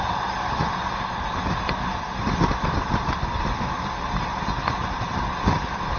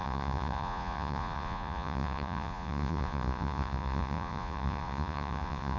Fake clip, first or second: second